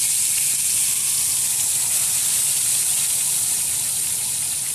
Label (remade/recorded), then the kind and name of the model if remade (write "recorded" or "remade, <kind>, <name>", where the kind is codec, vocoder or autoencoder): recorded